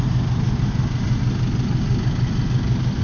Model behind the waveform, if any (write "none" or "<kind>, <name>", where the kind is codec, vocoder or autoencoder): none